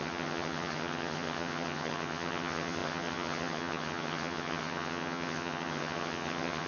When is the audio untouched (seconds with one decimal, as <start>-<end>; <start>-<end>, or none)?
none